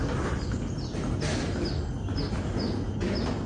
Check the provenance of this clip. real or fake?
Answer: real